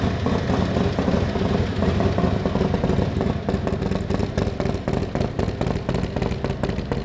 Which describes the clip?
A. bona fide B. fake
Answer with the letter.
A